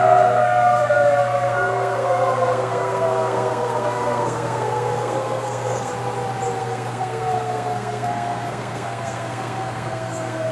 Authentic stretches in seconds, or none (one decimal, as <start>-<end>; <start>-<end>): 5.9-6.6